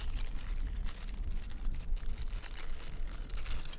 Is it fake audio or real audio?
real